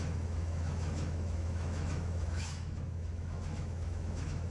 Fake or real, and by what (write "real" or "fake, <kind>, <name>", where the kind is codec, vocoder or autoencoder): fake, autoencoder, DAC-VAE